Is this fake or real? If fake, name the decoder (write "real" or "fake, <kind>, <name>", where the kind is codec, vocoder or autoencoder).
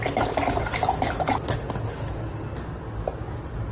real